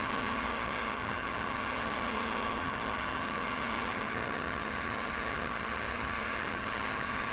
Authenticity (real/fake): fake